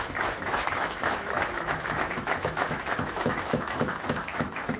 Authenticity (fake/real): fake